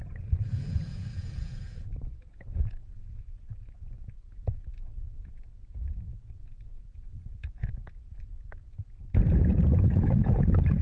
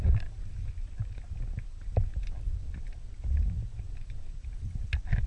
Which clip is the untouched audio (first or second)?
second